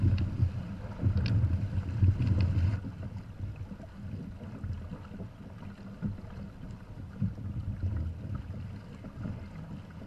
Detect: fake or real real